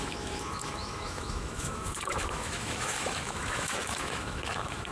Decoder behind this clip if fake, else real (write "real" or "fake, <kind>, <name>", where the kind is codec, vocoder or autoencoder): fake, autoencoder, DAC-VAE